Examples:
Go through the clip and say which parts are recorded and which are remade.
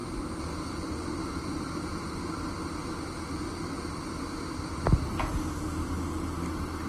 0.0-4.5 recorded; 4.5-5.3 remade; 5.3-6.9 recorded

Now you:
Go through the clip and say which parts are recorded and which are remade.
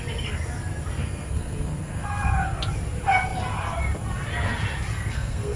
0.0-1.0 recorded; 1.0-2.6 remade; 2.6-4.9 recorded; 4.9-5.6 remade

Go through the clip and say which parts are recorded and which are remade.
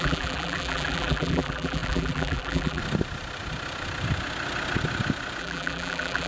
0.0-2.8 remade; 2.8-5.4 recorded; 5.4-6.3 remade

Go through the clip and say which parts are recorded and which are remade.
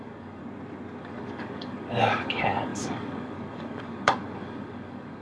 0.0-0.4 remade; 0.4-1.0 recorded; 1.0-5.2 remade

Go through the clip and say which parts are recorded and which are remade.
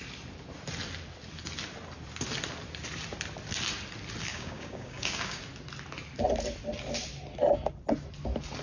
0.0-4.3 recorded; 4.3-5.4 remade; 5.4-8.6 recorded